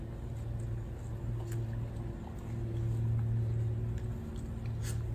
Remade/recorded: recorded